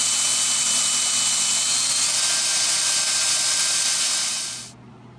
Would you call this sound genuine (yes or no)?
yes